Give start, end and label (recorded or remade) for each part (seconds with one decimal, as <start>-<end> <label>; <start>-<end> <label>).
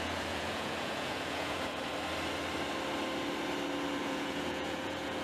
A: 0.0-1.9 remade; 1.9-4.0 recorded; 4.0-5.2 remade